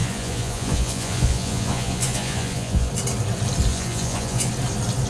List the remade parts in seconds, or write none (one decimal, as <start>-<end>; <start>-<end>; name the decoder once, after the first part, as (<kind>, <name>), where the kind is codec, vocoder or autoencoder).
0.0-2.9 (vocoder, Vocos); 3.7-4.5